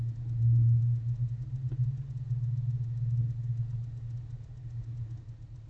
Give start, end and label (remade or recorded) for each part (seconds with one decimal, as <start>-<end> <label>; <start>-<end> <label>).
0.0-5.7 recorded

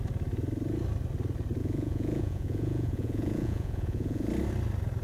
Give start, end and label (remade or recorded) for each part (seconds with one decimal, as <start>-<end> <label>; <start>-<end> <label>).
0.0-1.6 recorded; 1.6-4.3 remade; 4.3-5.0 recorded